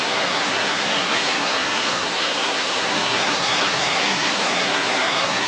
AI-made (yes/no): yes